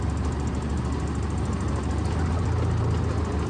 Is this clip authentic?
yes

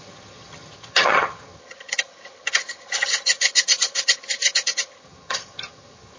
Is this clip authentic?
no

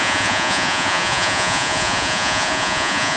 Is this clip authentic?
no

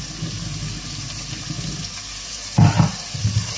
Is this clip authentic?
yes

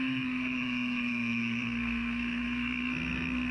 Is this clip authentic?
no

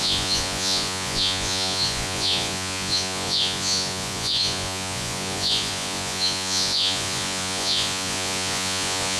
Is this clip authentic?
no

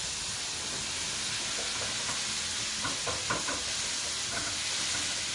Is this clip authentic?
yes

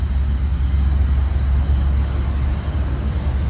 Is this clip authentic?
yes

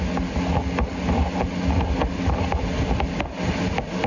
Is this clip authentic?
yes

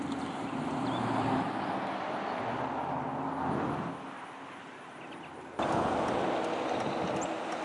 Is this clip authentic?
yes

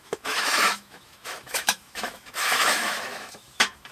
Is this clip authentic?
no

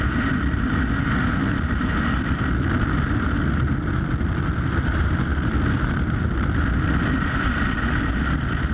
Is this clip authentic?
yes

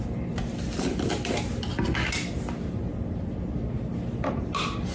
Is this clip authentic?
yes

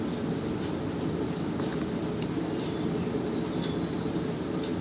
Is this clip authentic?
yes